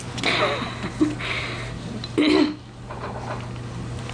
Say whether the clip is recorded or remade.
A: recorded